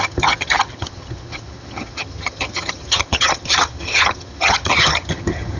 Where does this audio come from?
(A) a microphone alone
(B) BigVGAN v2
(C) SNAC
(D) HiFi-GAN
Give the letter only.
D